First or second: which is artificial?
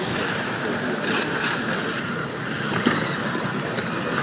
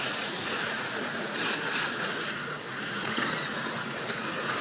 second